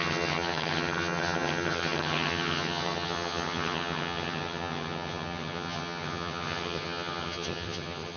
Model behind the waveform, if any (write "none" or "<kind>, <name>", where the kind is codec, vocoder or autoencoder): vocoder, HiFi-GAN